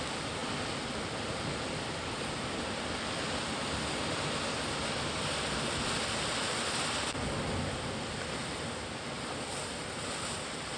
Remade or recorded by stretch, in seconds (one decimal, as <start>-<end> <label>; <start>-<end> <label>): 0.0-10.8 recorded